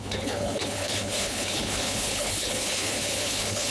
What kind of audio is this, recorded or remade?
remade